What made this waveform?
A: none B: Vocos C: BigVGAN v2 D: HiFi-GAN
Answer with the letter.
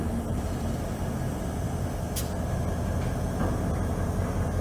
A